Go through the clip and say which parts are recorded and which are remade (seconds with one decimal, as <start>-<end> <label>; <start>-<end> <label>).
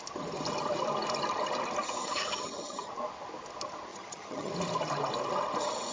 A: 0.0-2.0 recorded; 2.0-2.9 remade; 2.9-3.9 recorded; 3.9-4.5 remade; 4.5-5.9 recorded